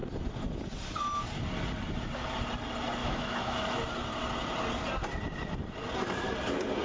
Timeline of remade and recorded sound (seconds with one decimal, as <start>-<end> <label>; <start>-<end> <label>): 0.0-3.0 recorded; 3.0-3.8 remade; 3.8-6.8 recorded